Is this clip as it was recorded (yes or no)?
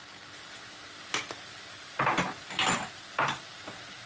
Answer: yes